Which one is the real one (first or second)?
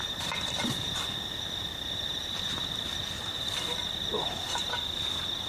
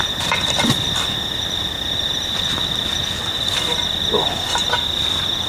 second